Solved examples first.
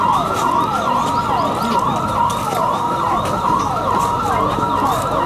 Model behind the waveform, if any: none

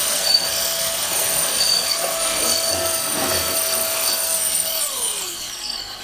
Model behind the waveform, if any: codec, SNAC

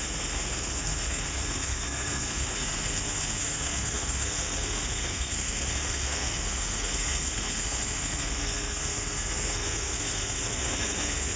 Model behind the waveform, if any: codec, SNAC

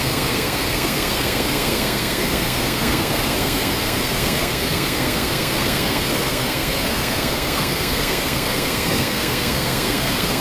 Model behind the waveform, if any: codec, SNAC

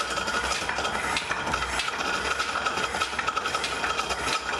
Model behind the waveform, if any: none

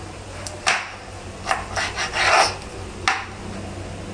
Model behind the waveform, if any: none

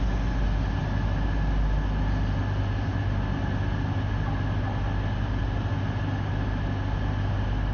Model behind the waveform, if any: none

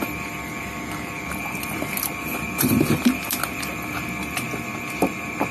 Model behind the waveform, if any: none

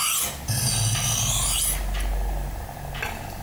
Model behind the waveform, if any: none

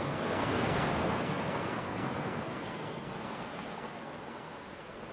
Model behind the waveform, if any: codec, SNAC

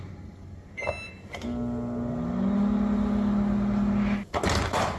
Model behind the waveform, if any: none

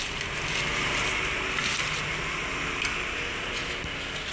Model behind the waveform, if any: none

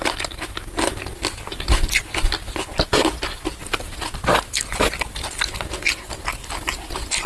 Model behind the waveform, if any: none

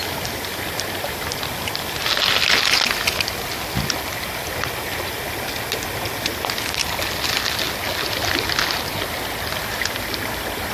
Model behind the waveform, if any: none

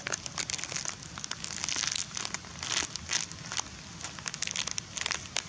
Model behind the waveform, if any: none